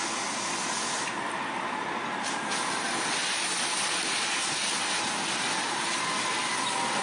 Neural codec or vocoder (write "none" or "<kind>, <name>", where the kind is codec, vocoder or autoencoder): none